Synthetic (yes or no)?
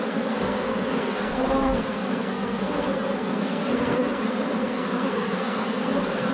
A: yes